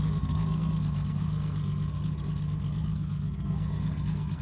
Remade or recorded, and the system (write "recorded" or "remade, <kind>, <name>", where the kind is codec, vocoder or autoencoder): remade, codec, SNAC